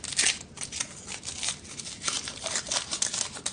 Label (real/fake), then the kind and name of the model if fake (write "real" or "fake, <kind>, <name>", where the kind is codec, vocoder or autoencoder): real